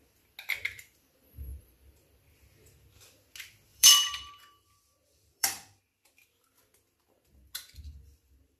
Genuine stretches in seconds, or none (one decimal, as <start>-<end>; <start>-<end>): 0.0-1.5; 2.4-3.7; 5.8-8.6